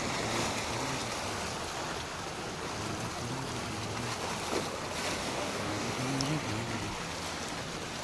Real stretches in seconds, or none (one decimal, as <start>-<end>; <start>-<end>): 0.0-5.2; 5.9-8.0